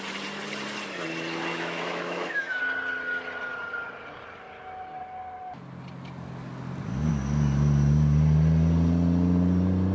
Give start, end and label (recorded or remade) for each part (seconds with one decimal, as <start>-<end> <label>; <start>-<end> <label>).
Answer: 0.0-1.5 recorded; 1.5-2.6 remade; 2.6-9.9 recorded